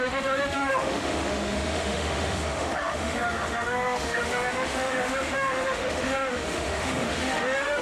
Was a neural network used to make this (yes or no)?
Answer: yes